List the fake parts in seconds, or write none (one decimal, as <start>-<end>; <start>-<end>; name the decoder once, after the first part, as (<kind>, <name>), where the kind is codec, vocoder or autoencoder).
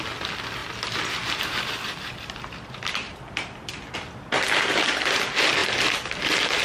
0.6-3.7 (vocoder, BigVGAN v2); 5.6-6.6